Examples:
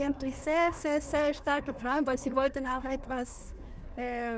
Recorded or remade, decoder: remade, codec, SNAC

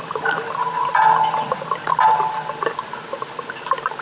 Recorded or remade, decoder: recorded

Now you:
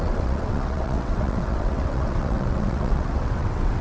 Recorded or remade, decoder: remade, vocoder, WaveNeXt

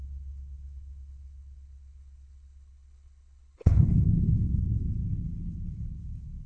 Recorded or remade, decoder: remade, codec, HILCodec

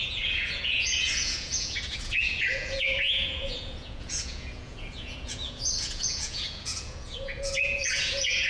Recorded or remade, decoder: remade, vocoder, Vocos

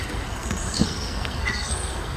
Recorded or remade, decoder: remade, codec, SNAC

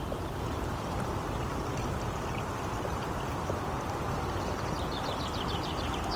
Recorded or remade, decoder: remade, vocoder, BigVGAN v2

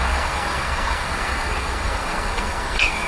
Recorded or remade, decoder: remade, codec, SNAC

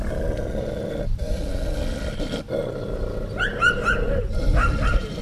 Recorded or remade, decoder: recorded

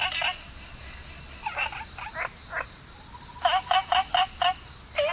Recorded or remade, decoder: recorded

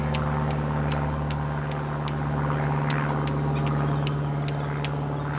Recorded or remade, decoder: recorded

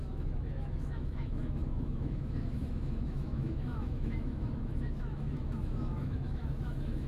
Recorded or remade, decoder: remade, autoencoder, DAC-VAE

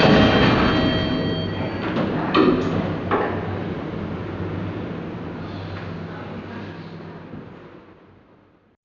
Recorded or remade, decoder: recorded